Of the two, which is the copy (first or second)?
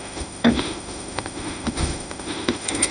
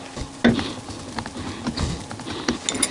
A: first